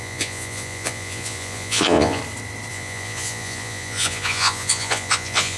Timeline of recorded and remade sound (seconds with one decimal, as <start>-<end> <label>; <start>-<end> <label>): 0.0-2.2 remade; 2.2-2.7 recorded; 2.7-5.6 remade